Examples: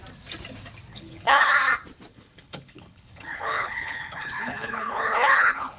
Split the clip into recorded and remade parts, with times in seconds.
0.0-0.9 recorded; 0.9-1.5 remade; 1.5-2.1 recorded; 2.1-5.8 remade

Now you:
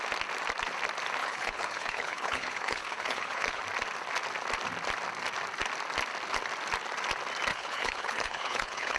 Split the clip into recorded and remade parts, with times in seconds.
0.0-1.2 recorded; 1.2-3.6 remade; 3.6-7.5 recorded; 7.5-9.0 remade

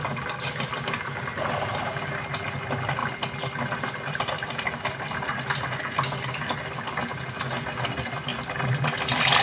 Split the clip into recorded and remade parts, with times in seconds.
0.0-8.3 recorded; 8.3-8.8 remade; 8.8-9.4 recorded

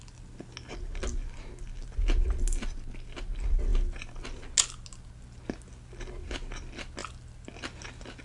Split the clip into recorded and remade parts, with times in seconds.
0.0-8.2 recorded

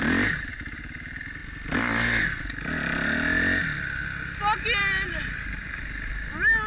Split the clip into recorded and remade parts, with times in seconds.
0.0-6.7 recorded